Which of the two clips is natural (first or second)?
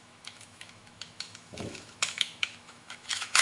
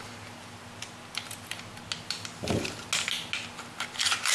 second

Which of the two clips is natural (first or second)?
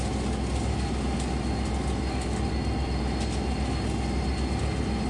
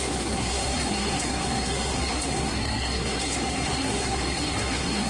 first